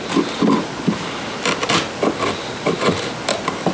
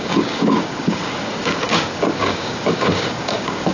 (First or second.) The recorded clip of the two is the first